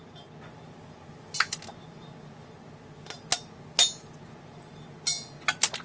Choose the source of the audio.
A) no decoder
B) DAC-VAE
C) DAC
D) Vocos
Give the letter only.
A